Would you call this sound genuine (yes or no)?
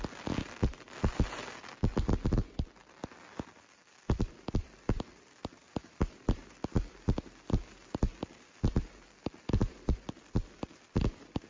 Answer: no